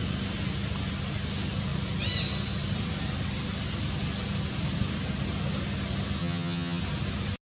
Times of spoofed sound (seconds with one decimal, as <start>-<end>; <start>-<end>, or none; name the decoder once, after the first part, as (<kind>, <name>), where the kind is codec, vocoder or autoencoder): 6.2-6.8 (vocoder, HiFi-GAN)